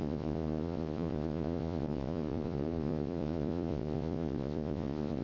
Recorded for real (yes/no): no